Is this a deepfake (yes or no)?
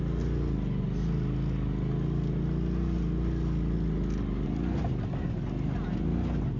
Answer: no